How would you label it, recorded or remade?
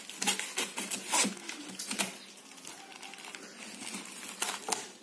recorded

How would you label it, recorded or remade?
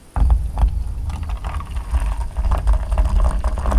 recorded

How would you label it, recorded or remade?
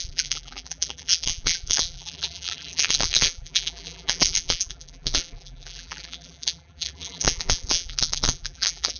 remade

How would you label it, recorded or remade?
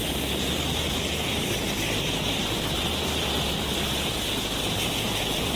recorded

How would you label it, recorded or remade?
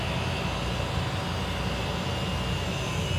recorded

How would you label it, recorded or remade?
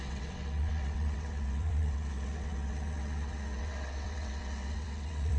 remade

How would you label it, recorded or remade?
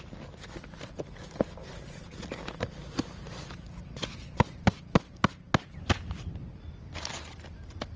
recorded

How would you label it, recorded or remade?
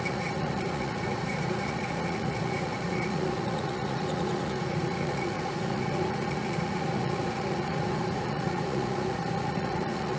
remade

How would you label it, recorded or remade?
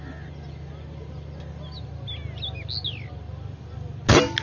recorded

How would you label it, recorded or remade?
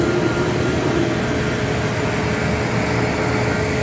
recorded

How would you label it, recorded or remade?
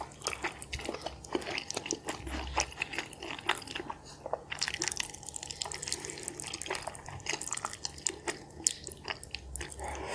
recorded